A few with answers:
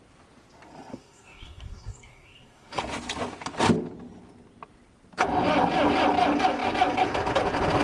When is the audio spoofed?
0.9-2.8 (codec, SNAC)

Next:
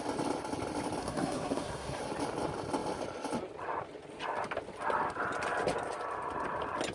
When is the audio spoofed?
1.0-2.0 (codec, SNAC)